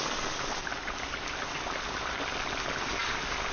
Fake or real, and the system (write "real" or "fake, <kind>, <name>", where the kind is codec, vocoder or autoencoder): real